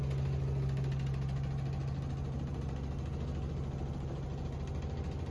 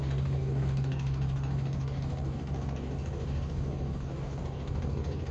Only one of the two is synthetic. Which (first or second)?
second